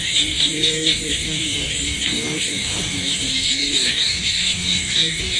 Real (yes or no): no